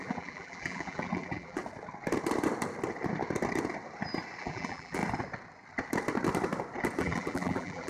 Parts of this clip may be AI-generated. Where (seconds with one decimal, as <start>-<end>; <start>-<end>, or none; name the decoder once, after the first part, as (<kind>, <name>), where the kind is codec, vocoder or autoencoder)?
0.0-1.6 (vocoder, BigVGAN v2); 4.4-5.0; 7.0-7.9